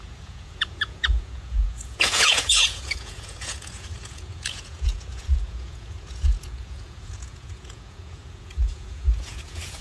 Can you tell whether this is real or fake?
fake